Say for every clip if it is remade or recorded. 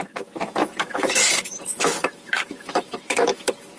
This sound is remade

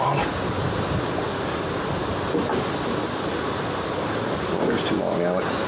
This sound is recorded